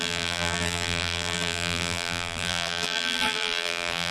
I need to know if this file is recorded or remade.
remade